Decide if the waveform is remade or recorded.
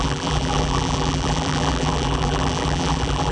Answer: remade